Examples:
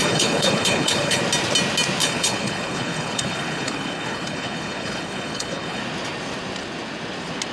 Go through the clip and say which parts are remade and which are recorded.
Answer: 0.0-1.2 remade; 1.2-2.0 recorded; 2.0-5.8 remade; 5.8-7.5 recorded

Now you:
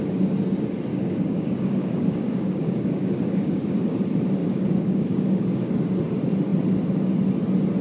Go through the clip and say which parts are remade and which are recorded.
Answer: 0.0-0.9 recorded; 0.9-4.0 remade; 4.0-4.4 recorded; 4.4-5.7 remade; 5.7-7.8 recorded

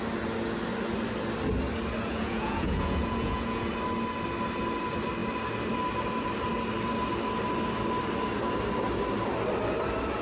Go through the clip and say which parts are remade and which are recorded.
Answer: 0.0-2.1 recorded; 2.1-3.7 remade; 3.7-10.2 recorded

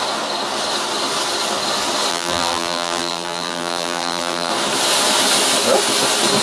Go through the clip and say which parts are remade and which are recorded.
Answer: 0.0-2.1 recorded; 2.1-4.5 remade; 4.5-6.4 recorded

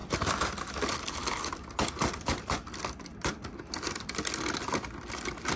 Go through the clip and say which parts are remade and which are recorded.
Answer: 0.0-5.6 recorded

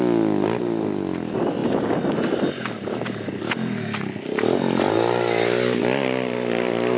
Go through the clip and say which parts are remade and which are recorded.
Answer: 0.0-7.0 recorded

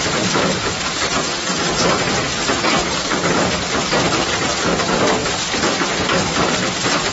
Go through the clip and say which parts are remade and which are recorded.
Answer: 0.0-7.1 recorded

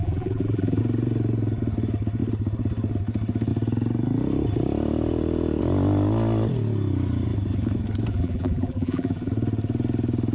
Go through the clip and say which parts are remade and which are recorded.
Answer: 0.0-0.8 remade; 0.8-8.1 recorded; 8.1-9.3 remade; 9.3-10.3 recorded